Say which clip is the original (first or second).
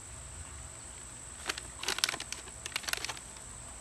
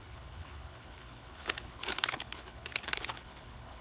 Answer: first